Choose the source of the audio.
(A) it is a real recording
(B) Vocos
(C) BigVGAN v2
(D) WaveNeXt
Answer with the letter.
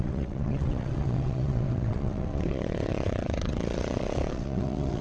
D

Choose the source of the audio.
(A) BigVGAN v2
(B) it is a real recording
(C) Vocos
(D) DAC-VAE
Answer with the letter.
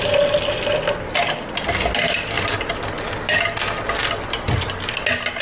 B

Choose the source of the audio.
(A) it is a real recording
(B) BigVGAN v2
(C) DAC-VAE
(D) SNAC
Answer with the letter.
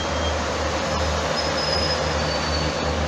A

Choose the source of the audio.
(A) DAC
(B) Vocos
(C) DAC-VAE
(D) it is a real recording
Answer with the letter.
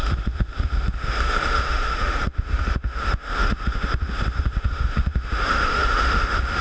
C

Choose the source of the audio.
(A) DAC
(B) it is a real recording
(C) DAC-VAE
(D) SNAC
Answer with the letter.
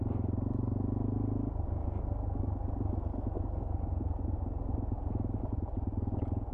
B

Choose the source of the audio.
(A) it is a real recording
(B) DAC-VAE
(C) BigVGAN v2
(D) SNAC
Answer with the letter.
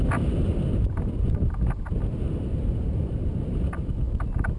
A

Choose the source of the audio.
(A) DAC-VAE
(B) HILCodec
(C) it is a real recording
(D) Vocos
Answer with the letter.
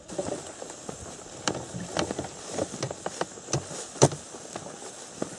C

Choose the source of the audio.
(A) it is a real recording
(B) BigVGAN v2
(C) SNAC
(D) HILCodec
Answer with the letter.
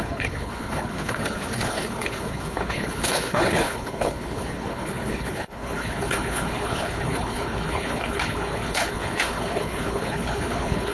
D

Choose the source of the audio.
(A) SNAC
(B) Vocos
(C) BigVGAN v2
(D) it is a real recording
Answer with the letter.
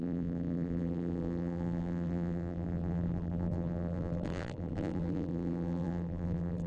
C